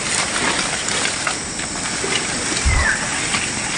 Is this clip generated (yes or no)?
no